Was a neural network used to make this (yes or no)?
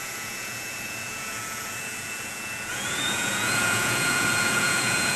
yes